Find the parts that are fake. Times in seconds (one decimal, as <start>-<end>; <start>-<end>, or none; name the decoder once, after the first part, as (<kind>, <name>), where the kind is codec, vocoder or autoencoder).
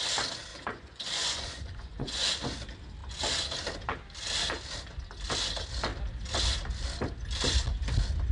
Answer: 0.5-2.3 (vocoder, Vocos)